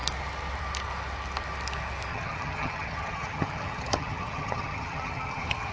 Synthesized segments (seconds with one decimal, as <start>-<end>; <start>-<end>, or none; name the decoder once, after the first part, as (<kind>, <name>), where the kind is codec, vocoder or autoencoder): 2.1-5.7 (vocoder, HiFi-GAN)